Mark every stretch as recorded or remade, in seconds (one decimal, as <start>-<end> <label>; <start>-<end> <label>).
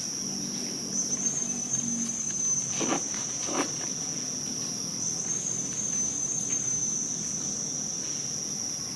0.0-9.0 recorded